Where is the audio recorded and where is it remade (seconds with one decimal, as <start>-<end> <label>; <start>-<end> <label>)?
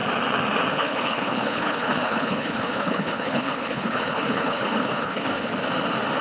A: 0.0-0.7 recorded; 0.7-5.5 remade; 5.5-6.2 recorded